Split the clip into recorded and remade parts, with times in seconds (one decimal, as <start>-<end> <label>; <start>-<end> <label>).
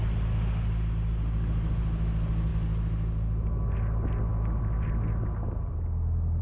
0.0-6.4 recorded